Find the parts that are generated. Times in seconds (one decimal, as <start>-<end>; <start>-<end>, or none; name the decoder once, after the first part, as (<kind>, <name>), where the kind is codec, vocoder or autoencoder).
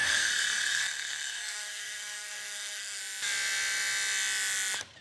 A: 0.0-3.0 (codec, SNAC)